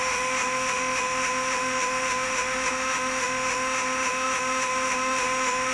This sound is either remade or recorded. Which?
remade